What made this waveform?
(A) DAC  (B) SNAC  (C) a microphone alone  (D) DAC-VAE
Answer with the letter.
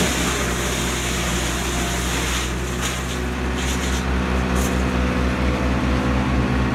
C